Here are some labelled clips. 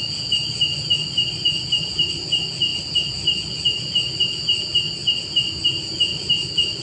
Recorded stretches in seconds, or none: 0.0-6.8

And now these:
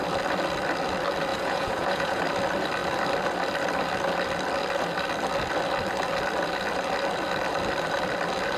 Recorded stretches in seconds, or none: 0.0-1.3; 2.2-8.6

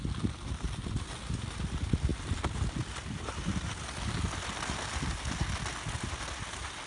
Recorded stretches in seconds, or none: 0.0-6.9